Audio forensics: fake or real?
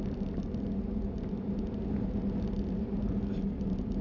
real